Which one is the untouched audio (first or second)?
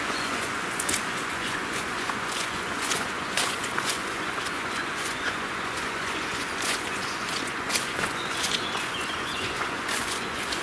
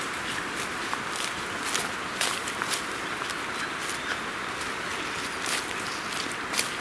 second